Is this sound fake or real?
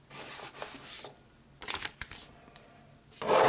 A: real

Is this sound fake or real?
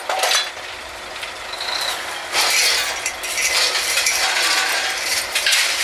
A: real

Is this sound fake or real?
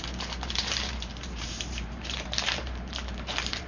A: fake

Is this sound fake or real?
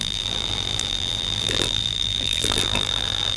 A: fake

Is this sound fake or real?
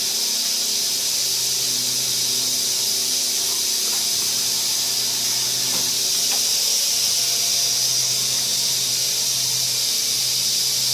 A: real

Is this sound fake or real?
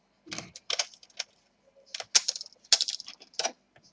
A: real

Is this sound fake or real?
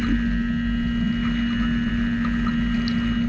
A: real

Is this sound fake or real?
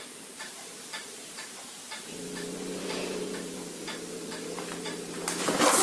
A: fake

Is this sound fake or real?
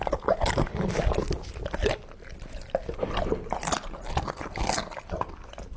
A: real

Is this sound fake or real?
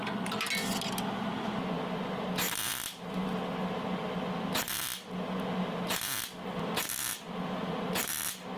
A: real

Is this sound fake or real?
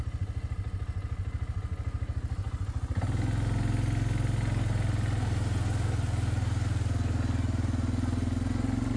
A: real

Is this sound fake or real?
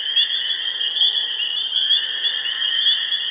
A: real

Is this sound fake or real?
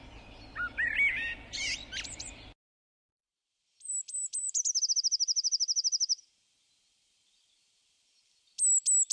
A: real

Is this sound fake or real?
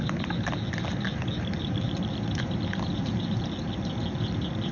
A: real